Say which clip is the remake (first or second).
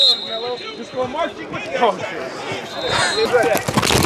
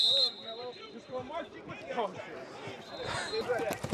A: second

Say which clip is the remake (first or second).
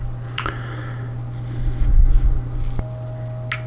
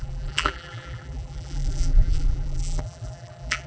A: second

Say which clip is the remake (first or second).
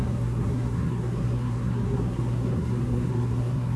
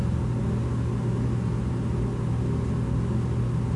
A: first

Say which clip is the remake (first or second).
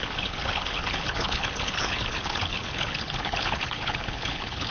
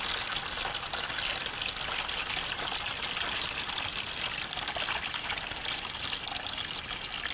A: first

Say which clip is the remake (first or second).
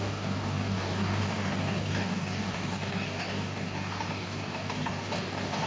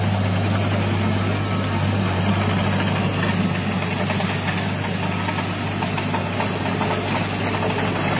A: first